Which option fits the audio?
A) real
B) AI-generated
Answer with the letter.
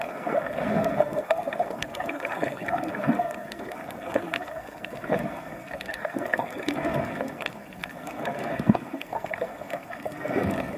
B